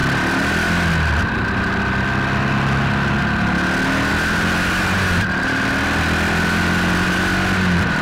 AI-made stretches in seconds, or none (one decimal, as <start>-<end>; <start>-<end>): none